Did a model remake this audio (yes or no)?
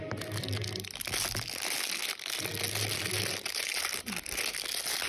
no